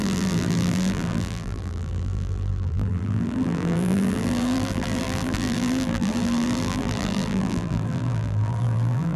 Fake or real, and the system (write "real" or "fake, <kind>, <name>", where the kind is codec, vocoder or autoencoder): fake, vocoder, BigVGAN v2